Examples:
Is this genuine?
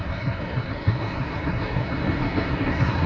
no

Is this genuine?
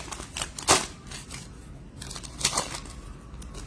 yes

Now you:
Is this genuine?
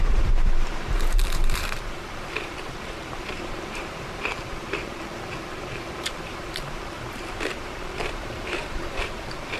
no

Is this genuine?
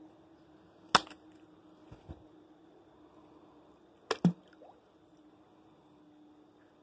yes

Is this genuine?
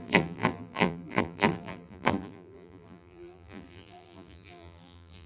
no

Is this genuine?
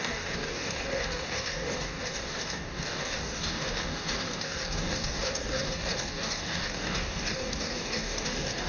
no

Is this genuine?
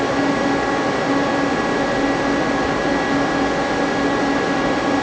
yes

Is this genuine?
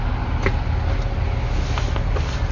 yes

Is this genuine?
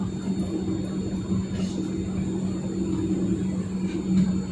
yes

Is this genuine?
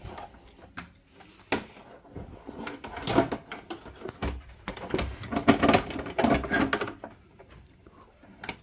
yes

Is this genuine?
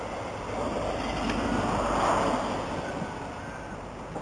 yes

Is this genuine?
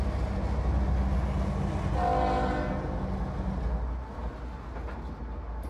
yes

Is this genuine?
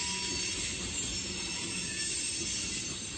yes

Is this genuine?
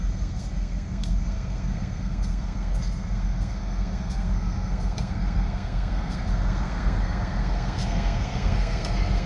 no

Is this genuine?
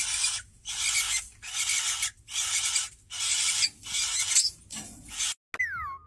yes